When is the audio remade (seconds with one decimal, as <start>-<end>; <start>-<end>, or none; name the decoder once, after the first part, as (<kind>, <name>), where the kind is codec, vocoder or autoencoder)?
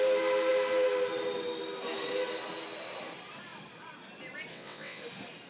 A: 4.5-5.0 (vocoder, WaveNeXt)